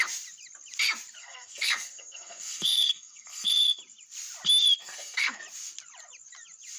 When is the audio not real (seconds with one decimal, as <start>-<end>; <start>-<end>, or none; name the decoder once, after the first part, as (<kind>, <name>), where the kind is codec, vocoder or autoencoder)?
1.2-3.8 (codec, SNAC); 4.8-5.4